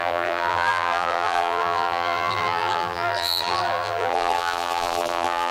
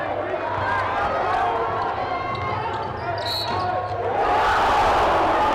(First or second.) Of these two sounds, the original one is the second